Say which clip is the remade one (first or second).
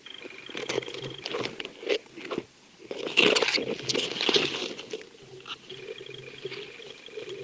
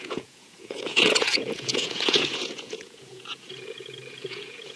second